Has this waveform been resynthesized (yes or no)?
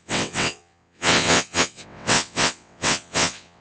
yes